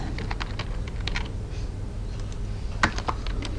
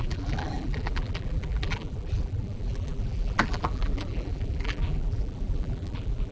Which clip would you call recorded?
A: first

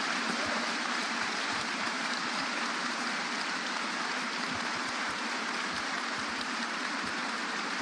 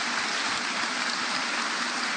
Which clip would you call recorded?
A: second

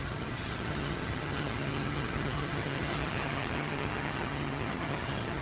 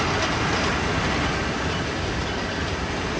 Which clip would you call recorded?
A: second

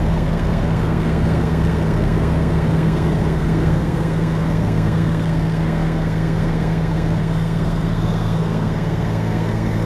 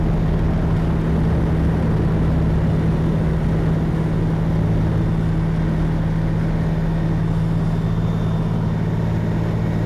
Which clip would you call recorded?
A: second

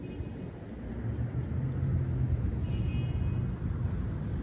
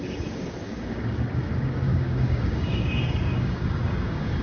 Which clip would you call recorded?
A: first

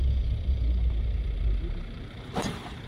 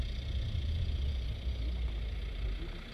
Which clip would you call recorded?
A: second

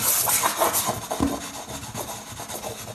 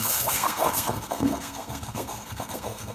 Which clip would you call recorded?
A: first